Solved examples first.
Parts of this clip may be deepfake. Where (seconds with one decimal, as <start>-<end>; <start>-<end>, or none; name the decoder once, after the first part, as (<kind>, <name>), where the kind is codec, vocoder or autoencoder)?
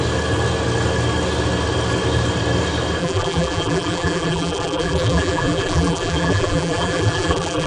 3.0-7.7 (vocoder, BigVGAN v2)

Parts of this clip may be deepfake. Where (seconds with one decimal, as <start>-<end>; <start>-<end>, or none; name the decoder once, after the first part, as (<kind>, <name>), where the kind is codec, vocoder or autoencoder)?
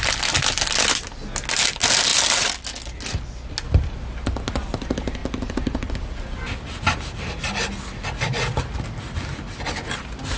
5.2-6.0 (vocoder, BigVGAN v2)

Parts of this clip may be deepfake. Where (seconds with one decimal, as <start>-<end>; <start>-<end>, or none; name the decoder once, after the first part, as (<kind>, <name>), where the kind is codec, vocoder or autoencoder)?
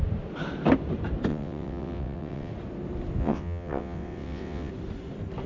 1.3-2.5 (vocoder, WaveNeXt); 3.2-4.7